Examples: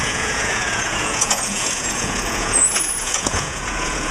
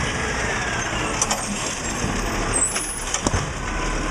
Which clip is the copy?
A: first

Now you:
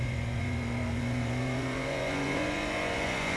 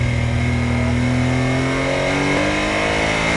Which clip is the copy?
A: first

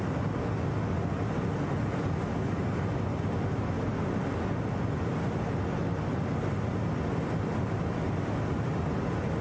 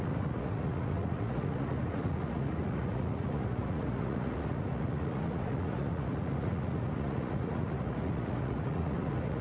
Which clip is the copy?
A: second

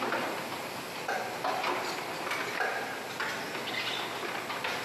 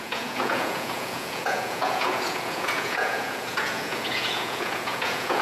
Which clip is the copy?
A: second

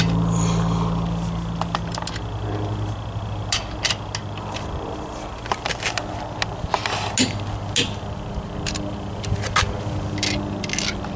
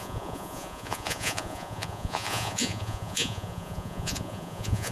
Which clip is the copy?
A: second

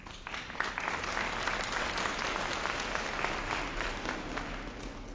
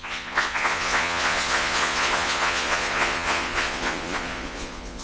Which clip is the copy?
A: second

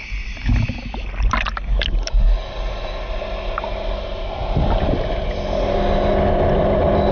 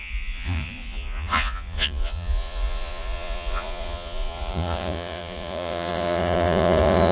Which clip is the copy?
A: second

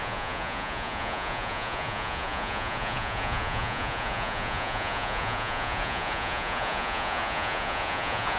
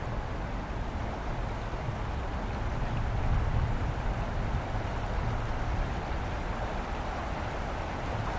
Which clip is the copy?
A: first